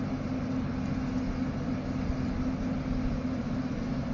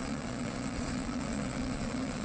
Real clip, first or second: first